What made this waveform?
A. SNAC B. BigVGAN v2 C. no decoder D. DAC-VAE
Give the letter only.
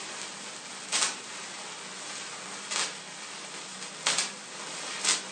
C